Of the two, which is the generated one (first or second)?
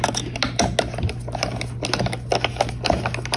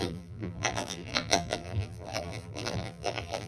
second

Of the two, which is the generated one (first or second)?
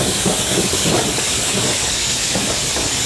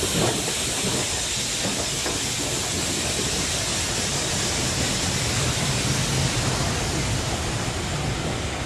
first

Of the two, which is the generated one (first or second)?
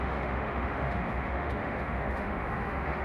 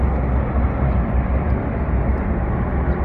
first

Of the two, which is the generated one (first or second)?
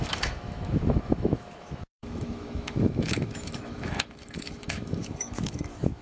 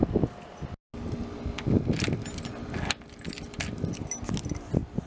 first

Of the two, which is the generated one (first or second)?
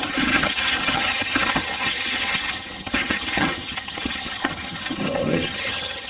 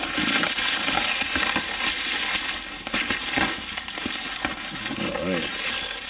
first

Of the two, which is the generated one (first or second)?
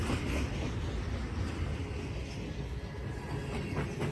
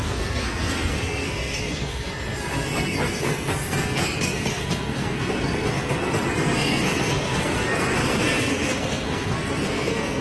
second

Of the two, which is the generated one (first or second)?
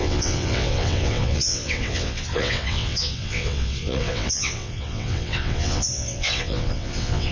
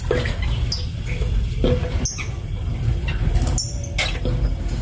first